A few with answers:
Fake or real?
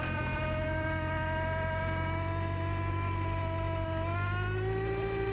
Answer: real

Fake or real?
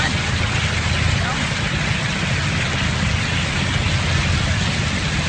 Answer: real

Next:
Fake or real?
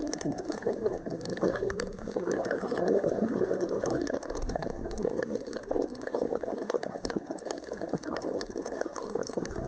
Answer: fake